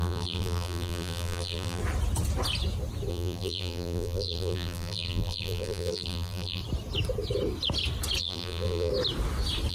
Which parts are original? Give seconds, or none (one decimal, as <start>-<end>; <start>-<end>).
1.8-3.1; 6.6-8.2; 8.9-9.7